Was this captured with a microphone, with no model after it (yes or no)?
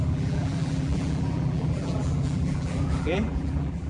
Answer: no